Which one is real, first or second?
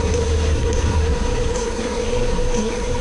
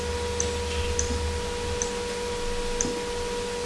second